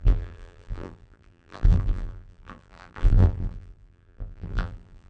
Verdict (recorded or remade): remade